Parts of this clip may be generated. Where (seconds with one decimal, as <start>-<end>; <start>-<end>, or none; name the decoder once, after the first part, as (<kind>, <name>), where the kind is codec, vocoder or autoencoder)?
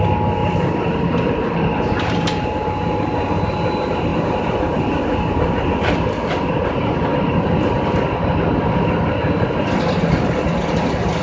0.4-2.7 (vocoder, BigVGAN v2)